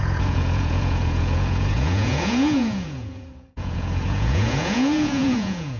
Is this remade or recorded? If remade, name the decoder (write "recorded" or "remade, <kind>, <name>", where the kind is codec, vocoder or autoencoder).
remade, vocoder, Vocos